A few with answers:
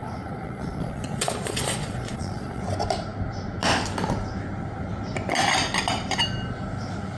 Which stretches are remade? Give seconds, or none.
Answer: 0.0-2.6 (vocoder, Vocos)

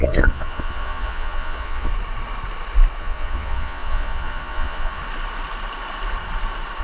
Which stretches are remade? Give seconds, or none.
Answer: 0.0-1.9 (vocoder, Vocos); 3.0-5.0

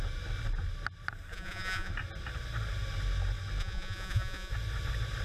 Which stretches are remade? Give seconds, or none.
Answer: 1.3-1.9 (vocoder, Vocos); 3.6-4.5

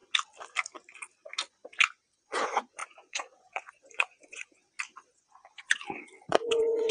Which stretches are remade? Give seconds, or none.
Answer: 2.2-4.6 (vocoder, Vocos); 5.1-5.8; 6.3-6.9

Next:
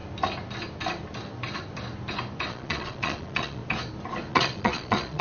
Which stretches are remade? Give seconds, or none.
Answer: 2.5-3.6 (vocoder, Vocos); 4.3-5.2

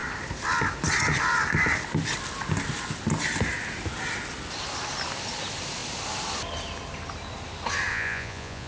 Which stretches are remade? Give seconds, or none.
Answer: 7.9-8.7 (vocoder, Vocos)